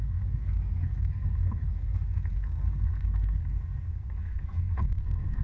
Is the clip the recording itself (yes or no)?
no